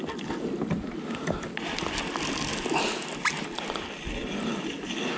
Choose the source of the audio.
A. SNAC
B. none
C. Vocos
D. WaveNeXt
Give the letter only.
B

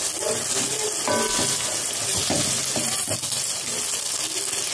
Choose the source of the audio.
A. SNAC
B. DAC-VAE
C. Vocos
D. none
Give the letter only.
D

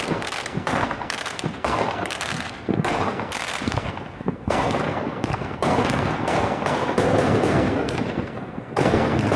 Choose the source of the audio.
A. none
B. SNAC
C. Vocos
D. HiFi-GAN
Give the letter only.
B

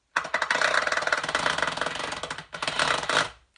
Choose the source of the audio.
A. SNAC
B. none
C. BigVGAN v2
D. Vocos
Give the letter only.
B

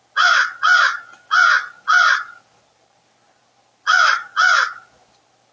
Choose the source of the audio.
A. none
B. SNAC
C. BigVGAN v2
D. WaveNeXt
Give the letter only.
A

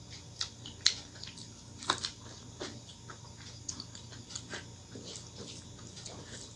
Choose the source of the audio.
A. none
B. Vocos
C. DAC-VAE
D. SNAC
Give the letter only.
A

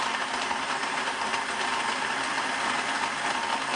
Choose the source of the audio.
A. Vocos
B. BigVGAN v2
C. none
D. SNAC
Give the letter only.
C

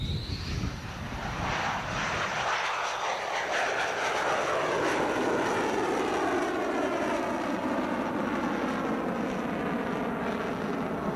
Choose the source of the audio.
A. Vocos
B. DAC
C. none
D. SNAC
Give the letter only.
C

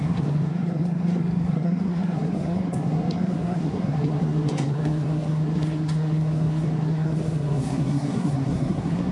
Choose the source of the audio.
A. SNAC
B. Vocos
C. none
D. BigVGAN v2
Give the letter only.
A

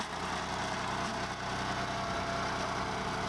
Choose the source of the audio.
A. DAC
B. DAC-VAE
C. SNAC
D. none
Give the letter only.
D